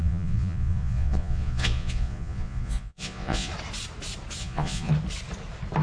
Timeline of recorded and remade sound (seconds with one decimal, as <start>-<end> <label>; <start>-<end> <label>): 0.0-3.5 remade; 3.5-4.4 recorded; 4.4-4.9 remade; 4.9-5.8 recorded

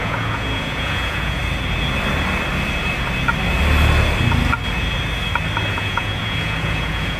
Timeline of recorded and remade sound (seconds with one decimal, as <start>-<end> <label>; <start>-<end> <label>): 0.0-1.4 remade; 1.4-5.7 recorded; 5.7-7.2 remade